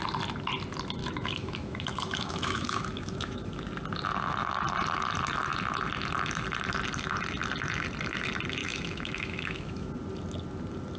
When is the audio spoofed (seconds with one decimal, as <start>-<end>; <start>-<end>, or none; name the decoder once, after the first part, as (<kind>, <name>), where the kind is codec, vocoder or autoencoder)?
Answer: 1.0-3.6 (autoencoder, DAC-VAE); 8.6-9.9